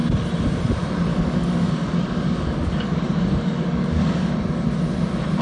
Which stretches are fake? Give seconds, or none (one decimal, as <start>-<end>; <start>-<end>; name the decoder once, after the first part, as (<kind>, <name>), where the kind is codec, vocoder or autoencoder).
1.1-4.3 (codec, DAC)